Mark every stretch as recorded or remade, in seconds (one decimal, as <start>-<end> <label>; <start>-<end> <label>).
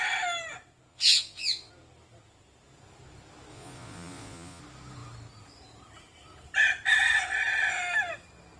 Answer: 0.0-0.9 recorded; 0.9-1.7 remade; 1.7-3.5 recorded; 3.5-4.6 remade; 4.6-8.6 recorded